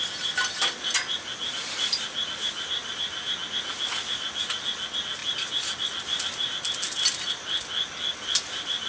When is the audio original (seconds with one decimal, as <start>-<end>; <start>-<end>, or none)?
0.0-8.9